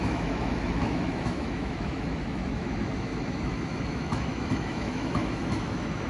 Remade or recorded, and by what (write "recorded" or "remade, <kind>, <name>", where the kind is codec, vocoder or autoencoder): remade, autoencoder, DAC-VAE